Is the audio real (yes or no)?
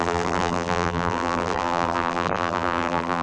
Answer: no